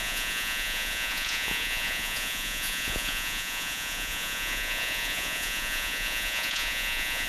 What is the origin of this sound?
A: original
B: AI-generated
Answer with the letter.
B